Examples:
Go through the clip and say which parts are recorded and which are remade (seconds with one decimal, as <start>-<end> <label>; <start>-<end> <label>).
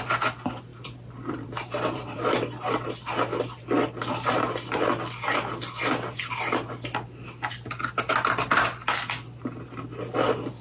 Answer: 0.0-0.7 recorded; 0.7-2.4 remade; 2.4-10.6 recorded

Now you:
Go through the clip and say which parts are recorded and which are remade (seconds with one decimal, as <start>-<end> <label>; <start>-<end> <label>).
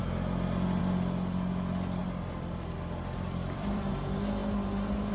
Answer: 0.0-2.0 recorded; 2.0-3.9 remade; 3.9-5.1 recorded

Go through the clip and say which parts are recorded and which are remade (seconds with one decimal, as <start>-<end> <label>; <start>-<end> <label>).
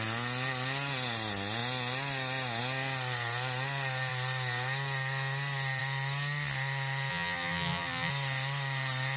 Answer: 0.0-7.1 recorded; 7.1-8.1 remade; 8.1-9.2 recorded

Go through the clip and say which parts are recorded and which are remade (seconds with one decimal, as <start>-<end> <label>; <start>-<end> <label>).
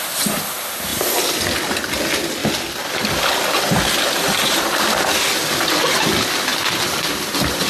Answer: 0.0-2.4 recorded; 2.4-4.6 remade; 4.6-6.5 recorded; 6.5-7.7 remade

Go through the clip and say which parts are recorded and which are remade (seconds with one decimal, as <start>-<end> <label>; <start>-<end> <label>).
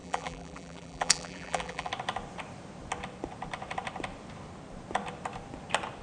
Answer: 0.0-1.9 remade; 1.9-6.0 recorded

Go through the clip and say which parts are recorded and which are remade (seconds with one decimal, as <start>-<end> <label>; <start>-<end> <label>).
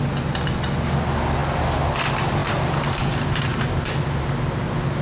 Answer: 0.0-2.4 recorded; 2.4-3.7 remade; 3.7-5.0 recorded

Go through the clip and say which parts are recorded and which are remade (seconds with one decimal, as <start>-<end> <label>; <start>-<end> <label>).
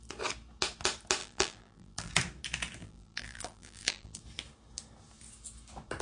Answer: 0.0-1.2 recorded; 1.2-2.1 remade; 2.1-2.8 recorded; 2.8-4.2 remade; 4.2-6.0 recorded